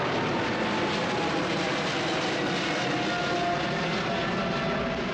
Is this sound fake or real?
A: real